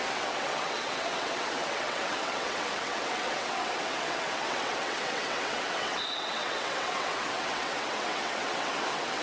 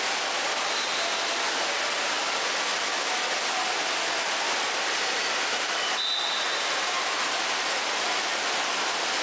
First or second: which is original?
second